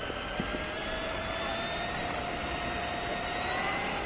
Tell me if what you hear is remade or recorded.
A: recorded